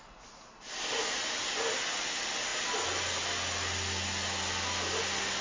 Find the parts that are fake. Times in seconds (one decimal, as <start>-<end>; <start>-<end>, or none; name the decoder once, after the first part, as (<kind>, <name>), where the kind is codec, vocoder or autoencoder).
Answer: none